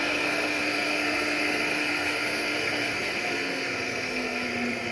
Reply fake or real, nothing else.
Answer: fake